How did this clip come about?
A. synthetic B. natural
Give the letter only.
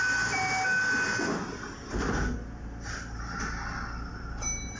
B